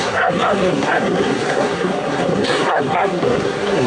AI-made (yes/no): yes